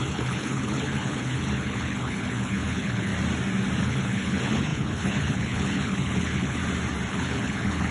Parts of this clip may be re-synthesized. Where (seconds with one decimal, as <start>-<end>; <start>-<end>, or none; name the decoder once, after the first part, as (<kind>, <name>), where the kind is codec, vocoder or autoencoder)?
0.0-3.1 (codec, HILCodec); 3.8-6.6; 7.1-7.9

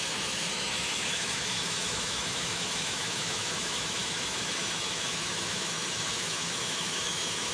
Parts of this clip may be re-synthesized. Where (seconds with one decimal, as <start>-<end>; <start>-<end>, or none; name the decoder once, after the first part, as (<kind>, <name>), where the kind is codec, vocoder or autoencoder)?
0.0-7.5 (autoencoder, DAC-VAE)

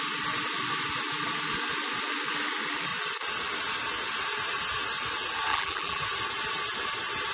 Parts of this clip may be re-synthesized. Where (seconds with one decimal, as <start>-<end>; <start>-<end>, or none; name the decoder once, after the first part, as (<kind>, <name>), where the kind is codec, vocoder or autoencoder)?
5.5-6.0 (vocoder, BigVGAN v2)

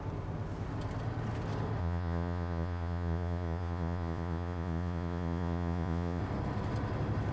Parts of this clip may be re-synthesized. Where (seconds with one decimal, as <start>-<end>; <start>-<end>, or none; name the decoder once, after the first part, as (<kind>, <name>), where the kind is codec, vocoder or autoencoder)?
1.8-6.2 (vocoder, Vocos)

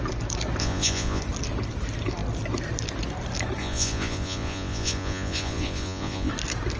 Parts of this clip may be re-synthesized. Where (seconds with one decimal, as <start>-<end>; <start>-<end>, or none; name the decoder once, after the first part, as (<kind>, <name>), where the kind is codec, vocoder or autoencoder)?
0.6-1.2 (vocoder, Vocos); 3.6-6.3

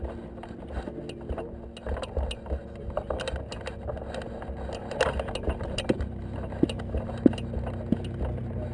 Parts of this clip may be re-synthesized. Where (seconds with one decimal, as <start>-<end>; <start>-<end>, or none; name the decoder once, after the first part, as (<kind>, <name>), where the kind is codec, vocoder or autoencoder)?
none